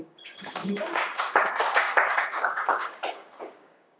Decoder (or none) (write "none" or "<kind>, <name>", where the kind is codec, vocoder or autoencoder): codec, DAC